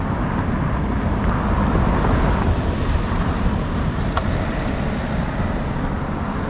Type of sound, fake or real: real